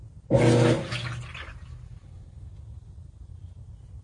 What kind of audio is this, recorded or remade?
recorded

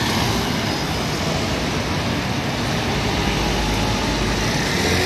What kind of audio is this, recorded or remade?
recorded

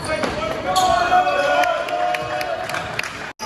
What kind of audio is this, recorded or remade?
recorded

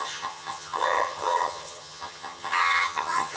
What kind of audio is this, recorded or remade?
remade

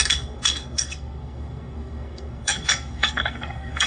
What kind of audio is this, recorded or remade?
remade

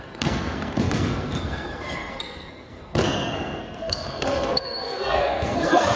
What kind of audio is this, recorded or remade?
remade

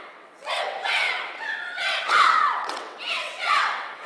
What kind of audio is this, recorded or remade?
remade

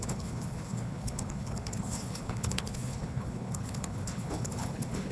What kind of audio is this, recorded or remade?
remade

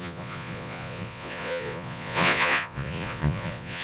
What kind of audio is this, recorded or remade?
remade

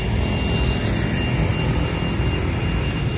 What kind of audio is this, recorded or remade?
recorded